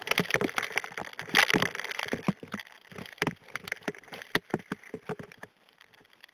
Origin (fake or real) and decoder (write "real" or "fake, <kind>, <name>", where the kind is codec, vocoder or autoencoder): real